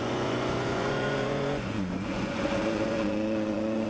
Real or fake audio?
fake